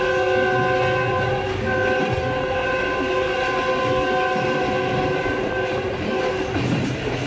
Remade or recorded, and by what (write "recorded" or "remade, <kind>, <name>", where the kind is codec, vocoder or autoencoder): recorded